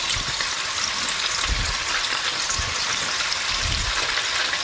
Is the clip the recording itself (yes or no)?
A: yes